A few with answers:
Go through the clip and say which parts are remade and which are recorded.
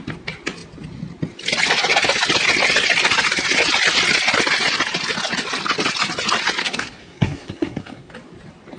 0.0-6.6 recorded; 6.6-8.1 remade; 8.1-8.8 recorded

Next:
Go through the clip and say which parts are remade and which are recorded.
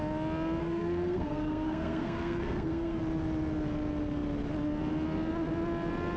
0.0-0.6 recorded; 0.6-3.0 remade; 3.0-6.2 recorded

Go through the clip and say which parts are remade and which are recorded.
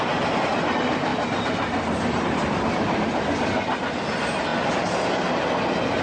0.0-6.0 recorded